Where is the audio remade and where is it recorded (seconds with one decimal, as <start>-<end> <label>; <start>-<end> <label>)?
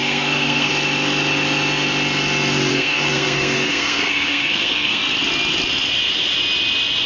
0.0-0.7 remade; 0.7-2.7 recorded; 2.7-5.0 remade; 5.0-7.1 recorded